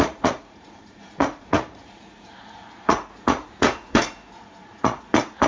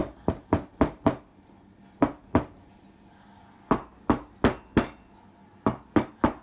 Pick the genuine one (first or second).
second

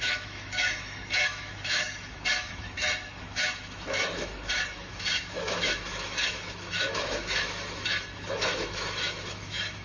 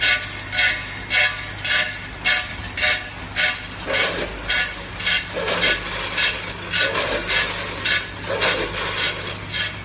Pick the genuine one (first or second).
second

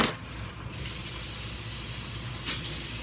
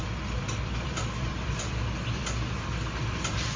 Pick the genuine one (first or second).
first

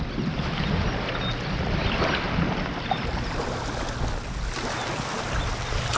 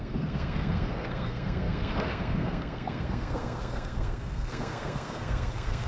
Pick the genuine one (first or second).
first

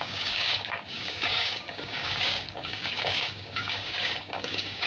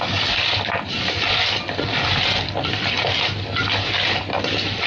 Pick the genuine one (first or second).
second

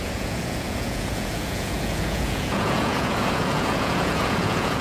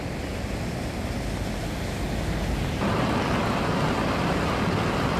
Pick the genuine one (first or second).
second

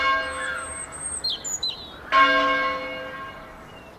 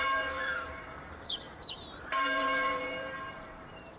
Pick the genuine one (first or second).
first